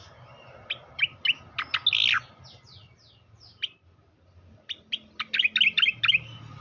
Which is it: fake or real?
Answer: real